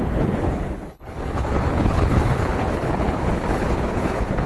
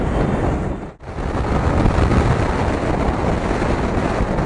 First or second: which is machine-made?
first